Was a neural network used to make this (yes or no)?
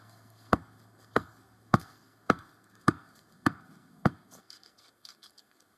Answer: yes